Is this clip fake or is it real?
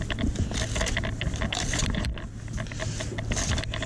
real